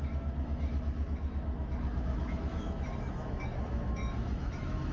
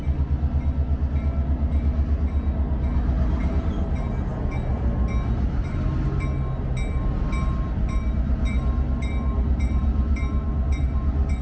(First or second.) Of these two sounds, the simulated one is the first